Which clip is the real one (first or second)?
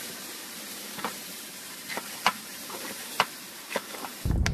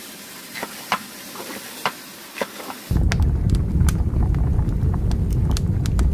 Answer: second